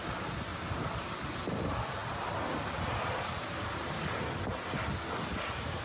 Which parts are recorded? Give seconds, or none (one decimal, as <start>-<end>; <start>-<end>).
0.0-5.8